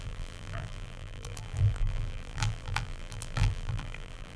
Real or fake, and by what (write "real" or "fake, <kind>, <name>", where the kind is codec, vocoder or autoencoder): fake, vocoder, BigVGAN v2